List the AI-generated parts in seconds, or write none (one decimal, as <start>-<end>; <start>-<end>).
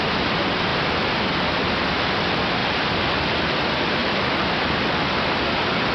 2.6-3.1; 4.0-5.0